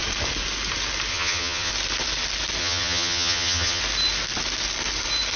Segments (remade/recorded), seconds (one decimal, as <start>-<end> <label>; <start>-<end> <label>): 0.0-1.1 recorded; 1.1-1.7 remade; 1.7-2.6 recorded; 2.6-3.8 remade; 3.8-5.4 recorded

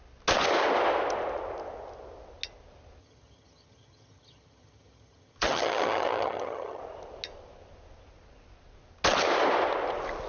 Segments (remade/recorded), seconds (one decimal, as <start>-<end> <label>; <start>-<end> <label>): 0.0-3.0 recorded; 3.0-6.8 remade; 6.8-10.3 recorded

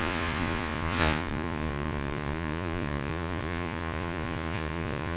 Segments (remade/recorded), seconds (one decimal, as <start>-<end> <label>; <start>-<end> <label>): 0.0-5.2 remade

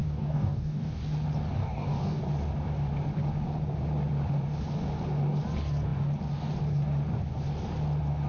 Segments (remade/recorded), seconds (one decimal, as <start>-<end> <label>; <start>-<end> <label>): 0.0-1.0 remade; 1.0-1.6 recorded; 1.6-2.2 remade; 2.2-8.3 recorded

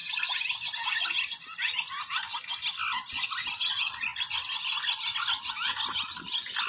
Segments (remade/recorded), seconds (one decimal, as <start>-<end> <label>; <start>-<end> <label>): 0.0-6.7 recorded

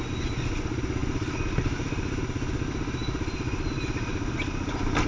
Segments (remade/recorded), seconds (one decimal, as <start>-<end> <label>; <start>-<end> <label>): 0.0-5.1 recorded

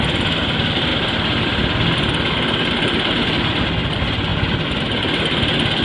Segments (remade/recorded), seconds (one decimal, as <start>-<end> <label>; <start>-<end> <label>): 0.0-5.8 recorded